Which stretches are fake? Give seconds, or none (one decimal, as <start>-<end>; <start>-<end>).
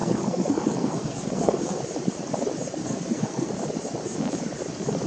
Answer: 0.0-1.8; 2.8-3.5